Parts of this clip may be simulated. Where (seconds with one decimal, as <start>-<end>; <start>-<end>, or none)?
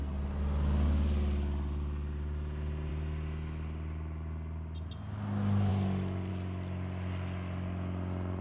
none